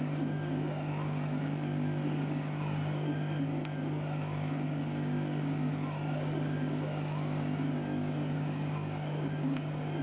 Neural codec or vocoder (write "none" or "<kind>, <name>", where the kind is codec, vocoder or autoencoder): codec, DAC